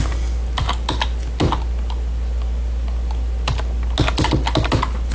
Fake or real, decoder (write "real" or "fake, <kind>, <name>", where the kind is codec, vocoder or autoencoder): real